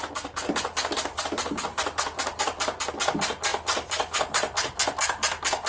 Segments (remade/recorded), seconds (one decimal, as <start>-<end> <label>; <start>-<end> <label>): 0.0-5.7 recorded